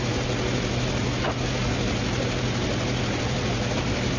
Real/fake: real